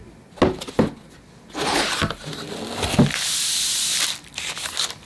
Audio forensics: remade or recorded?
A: recorded